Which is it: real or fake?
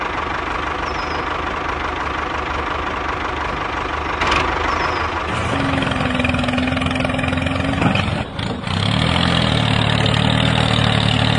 real